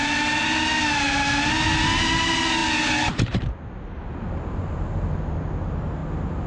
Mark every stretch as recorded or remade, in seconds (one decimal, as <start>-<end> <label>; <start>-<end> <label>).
0.0-6.5 recorded